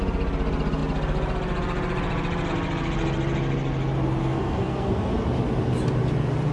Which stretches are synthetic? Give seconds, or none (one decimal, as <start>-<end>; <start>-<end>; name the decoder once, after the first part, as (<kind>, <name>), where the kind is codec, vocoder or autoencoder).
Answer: 4.2-5.1 (codec, SNAC)